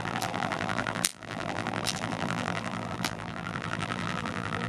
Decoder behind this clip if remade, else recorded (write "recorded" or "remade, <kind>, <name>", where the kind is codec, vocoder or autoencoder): remade, vocoder, BigVGAN v2